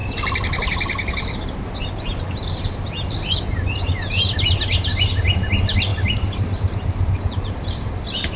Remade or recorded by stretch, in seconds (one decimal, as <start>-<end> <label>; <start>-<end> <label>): 0.0-5.9 recorded; 5.9-7.9 remade; 7.9-8.4 recorded